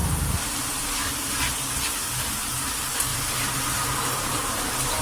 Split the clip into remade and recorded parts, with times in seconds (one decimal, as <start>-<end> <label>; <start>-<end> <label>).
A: 0.0-0.7 remade; 0.7-3.1 recorded; 3.1-4.6 remade; 4.6-5.0 recorded